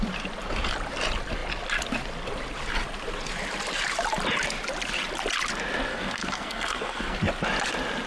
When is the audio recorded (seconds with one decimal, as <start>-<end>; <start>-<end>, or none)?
0.0-5.9; 7.2-8.1